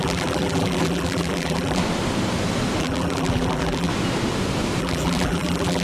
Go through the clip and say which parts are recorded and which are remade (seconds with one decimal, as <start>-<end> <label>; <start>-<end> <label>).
0.0-1.8 remade; 1.8-2.8 recorded; 2.8-3.9 remade; 3.9-4.8 recorded; 4.8-5.8 remade